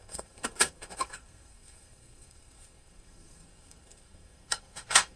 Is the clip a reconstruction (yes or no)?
yes